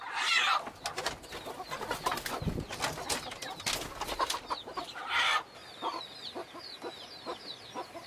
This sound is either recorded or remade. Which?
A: recorded